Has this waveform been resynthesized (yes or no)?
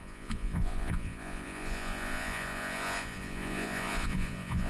yes